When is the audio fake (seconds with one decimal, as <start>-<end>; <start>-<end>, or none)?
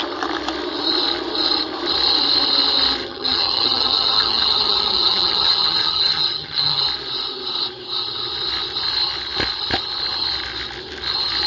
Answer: 3.0-6.8